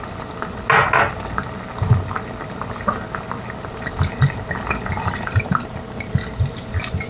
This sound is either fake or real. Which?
real